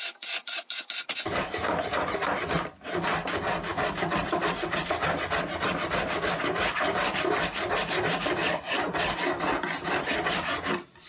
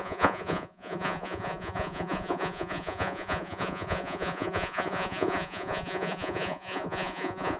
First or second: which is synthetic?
second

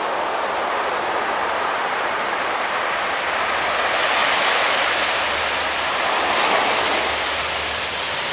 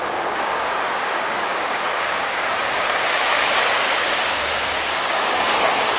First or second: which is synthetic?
second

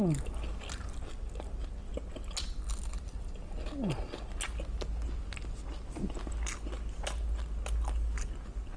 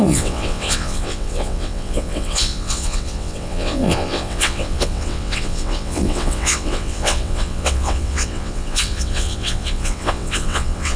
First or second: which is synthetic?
second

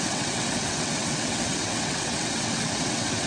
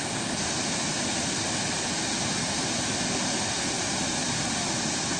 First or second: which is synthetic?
first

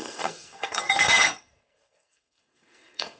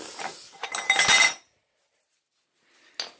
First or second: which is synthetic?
first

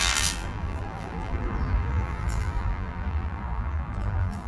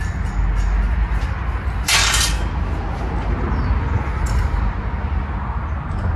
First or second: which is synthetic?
first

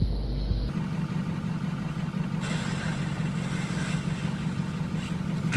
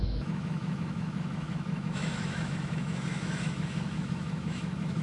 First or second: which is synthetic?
second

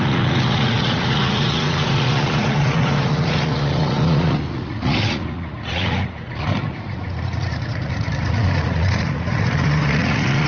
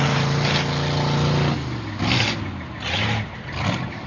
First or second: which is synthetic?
first